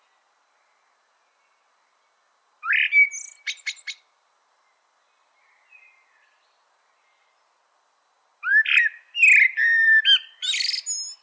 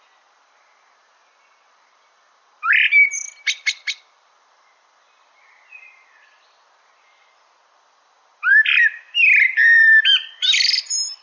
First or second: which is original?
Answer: first